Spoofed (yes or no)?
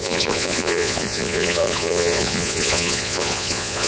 yes